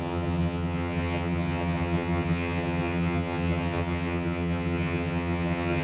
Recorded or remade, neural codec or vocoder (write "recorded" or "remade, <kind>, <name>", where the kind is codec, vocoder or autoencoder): remade, vocoder, HiFi-GAN